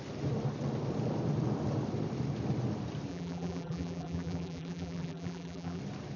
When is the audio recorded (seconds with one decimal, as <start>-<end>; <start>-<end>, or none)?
0.0-3.1; 5.8-6.2